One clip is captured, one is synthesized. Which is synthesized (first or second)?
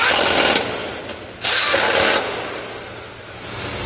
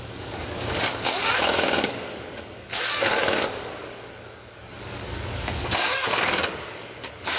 second